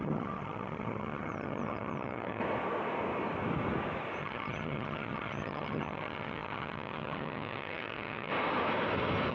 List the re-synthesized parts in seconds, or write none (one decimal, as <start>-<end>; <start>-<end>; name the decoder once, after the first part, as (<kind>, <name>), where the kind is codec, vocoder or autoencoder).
0.0-2.4 (vocoder, HiFi-GAN); 4.2-8.3